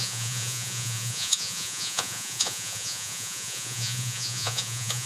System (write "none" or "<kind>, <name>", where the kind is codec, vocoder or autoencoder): vocoder, Vocos